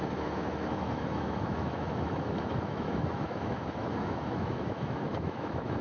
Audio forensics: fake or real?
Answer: fake